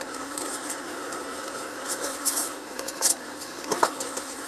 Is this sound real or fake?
fake